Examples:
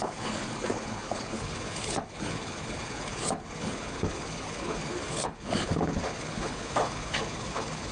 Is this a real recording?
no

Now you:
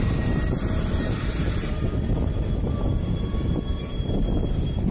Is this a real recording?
no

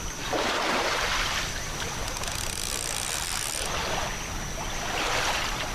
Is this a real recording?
yes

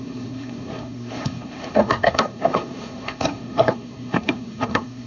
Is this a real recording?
no